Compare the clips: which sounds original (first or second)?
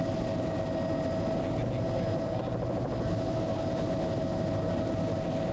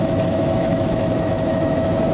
first